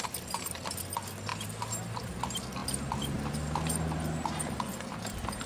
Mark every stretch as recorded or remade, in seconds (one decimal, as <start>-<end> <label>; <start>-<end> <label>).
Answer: 0.0-5.5 recorded